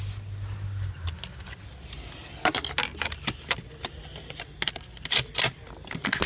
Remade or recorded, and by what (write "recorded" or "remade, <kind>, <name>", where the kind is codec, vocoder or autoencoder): recorded